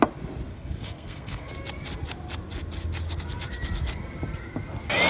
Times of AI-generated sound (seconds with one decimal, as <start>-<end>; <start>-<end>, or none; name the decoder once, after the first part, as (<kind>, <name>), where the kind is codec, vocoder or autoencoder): 0.5-1.5 (codec, SNAC)